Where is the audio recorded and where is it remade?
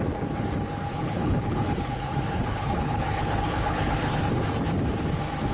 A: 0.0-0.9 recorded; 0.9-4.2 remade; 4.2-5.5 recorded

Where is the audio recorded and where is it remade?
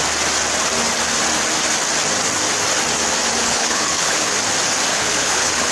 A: 0.0-3.4 recorded; 3.4-4.3 remade; 4.3-4.9 recorded; 4.9-5.7 remade